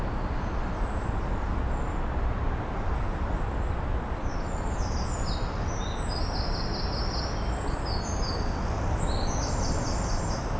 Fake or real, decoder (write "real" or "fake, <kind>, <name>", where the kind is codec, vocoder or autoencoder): real